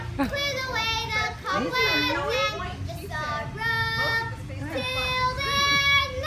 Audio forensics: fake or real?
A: real